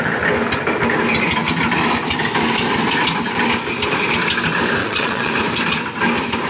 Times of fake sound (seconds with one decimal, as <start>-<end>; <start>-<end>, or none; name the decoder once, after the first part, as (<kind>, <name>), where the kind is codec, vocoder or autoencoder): 4.8-5.3 (vocoder, Vocos)